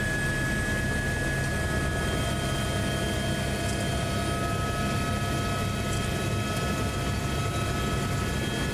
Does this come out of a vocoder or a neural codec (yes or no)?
no